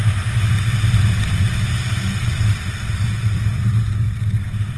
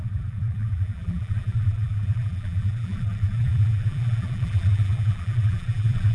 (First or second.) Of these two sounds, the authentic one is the first